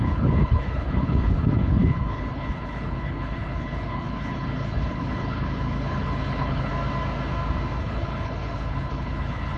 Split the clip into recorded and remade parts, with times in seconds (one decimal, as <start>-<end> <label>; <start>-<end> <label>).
0.0-6.7 remade; 6.7-7.8 recorded; 7.8-9.6 remade